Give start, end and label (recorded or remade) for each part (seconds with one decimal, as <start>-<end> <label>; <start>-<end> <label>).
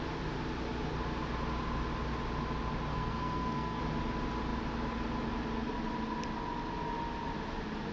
0.0-2.9 recorded; 2.9-3.8 remade; 3.8-7.9 recorded